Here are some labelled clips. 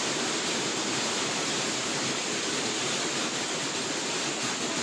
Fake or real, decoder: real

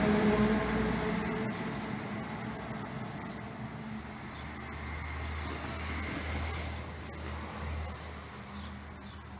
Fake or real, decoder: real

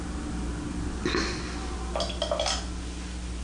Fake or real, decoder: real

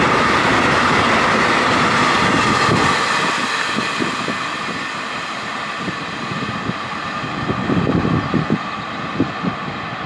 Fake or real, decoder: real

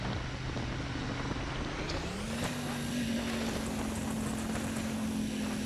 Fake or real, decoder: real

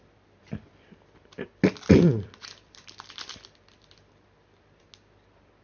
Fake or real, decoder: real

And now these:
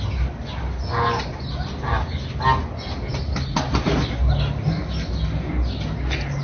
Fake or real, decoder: real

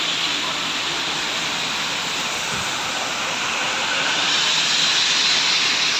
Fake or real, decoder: real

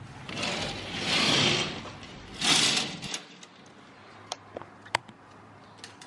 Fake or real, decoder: real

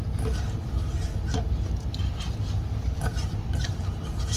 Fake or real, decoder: real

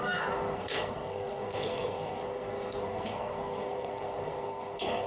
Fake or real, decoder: fake, codec, SNAC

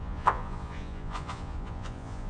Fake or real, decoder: fake, vocoder, Vocos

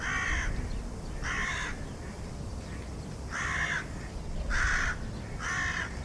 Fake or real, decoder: real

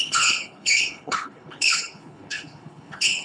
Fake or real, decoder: fake, codec, HILCodec